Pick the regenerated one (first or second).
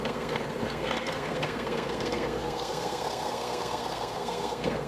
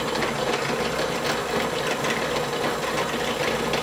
first